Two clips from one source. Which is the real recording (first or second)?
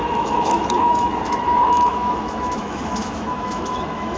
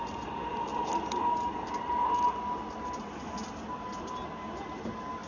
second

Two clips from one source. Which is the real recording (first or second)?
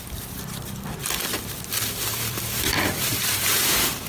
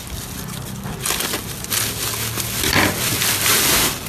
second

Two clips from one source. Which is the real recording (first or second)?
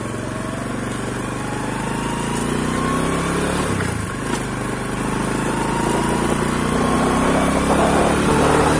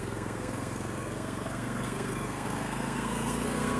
first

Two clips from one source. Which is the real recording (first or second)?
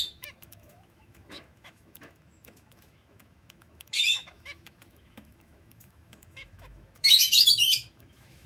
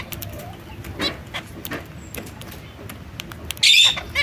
second